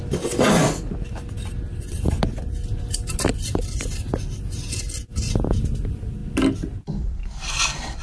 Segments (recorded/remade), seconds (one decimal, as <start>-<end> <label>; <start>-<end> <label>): 0.0-8.0 recorded